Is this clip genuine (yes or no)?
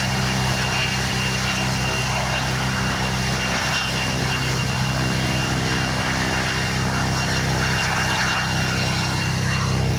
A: yes